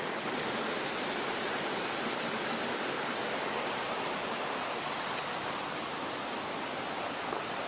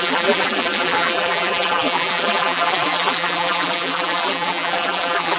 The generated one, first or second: second